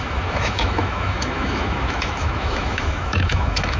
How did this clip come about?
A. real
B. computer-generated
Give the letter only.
B